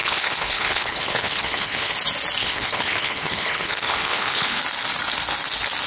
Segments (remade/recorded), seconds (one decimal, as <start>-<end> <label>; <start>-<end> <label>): 0.0-1.9 remade; 1.9-2.4 recorded; 2.4-4.6 remade; 4.6-5.9 recorded

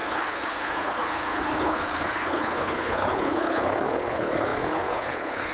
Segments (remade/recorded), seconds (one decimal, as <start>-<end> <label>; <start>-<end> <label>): 0.0-5.5 remade

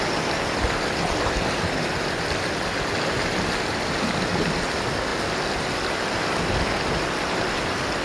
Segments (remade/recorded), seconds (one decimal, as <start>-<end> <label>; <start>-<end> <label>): 0.0-8.0 recorded

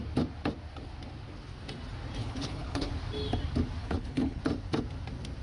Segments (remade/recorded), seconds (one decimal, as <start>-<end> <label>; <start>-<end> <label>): 0.0-2.2 recorded; 2.2-2.9 remade; 2.9-3.8 recorded; 3.8-4.4 remade; 4.4-5.4 recorded

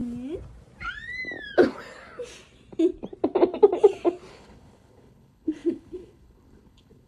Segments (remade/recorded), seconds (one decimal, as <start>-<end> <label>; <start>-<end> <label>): 0.0-4.3 recorded; 4.3-7.1 remade

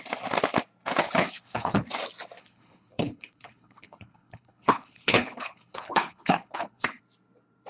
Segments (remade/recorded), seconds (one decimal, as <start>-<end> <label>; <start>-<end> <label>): 0.0-1.0 recorded; 1.0-1.8 remade; 1.8-2.4 recorded; 2.4-7.0 remade; 7.0-7.7 recorded